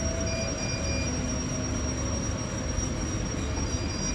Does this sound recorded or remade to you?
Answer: recorded